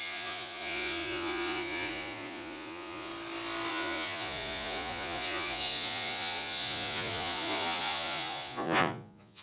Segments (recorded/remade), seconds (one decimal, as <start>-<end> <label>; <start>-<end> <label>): 0.0-3.1 remade; 3.1-3.7 recorded; 3.7-9.4 remade